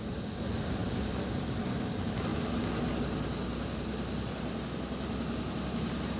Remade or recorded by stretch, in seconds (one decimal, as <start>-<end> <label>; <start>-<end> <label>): 0.0-6.2 recorded